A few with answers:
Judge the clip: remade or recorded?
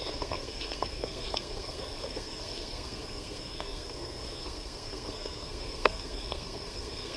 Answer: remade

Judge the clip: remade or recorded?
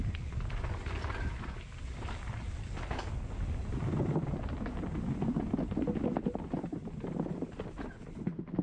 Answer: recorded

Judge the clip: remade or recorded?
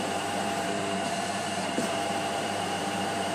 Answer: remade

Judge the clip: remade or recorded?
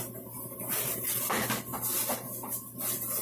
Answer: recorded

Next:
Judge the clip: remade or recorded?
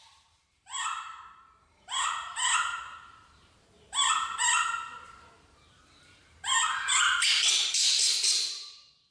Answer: remade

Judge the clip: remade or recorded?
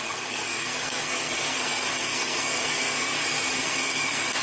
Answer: remade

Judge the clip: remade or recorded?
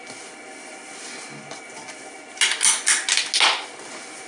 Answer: recorded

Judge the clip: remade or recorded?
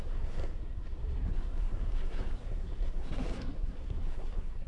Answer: remade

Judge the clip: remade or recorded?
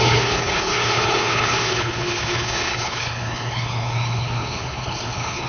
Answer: remade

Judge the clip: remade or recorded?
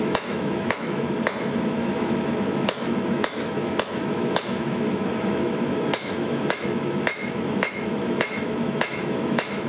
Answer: remade